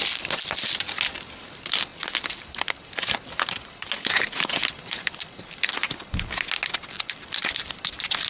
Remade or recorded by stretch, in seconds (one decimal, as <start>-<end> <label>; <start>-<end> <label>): 0.0-8.3 recorded